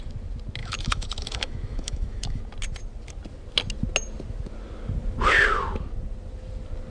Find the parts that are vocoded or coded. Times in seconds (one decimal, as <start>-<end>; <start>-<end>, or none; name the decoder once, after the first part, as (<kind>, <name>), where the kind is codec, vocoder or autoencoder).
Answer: 0.6-2.4 (autoencoder, DAC-VAE)

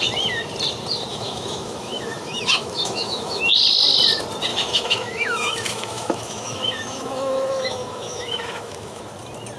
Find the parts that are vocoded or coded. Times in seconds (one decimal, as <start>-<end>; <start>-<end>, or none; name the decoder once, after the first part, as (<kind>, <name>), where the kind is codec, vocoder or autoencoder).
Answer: 1.1-3.4 (autoencoder, DAC-VAE); 4.5-9.0

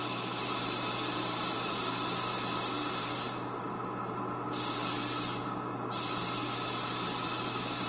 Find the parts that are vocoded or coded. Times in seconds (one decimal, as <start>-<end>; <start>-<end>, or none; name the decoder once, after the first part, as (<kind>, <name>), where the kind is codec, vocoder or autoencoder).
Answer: none